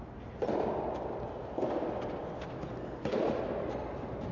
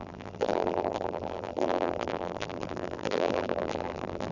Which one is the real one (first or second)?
first